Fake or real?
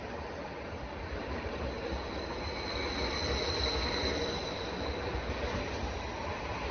real